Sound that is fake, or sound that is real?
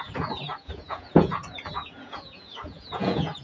fake